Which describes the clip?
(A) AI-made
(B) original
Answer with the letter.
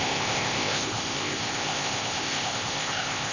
A